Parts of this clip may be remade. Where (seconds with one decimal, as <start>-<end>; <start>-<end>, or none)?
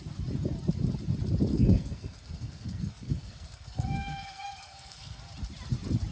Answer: 1.5-5.2